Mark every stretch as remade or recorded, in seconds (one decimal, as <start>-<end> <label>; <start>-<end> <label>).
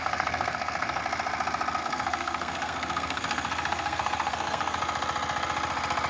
0.0-1.0 remade; 1.0-1.8 recorded; 1.8-4.8 remade; 4.8-6.1 recorded